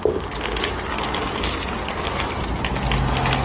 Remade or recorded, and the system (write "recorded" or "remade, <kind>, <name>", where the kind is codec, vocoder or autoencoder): recorded